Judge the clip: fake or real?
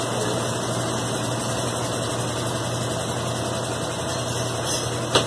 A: real